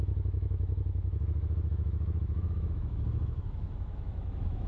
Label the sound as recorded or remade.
remade